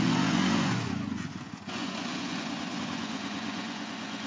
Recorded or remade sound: remade